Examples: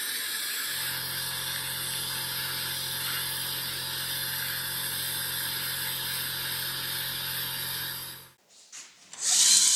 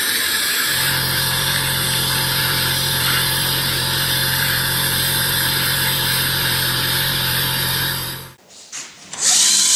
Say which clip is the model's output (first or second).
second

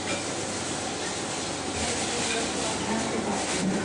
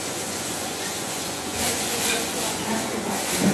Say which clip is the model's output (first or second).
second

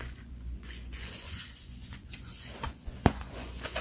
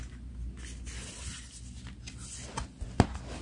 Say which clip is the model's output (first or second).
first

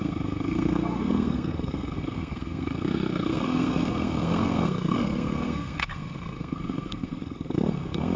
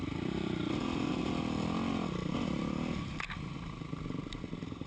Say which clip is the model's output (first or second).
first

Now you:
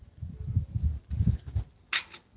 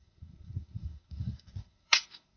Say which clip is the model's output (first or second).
second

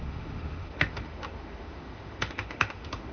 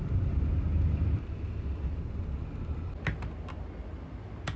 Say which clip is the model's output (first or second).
first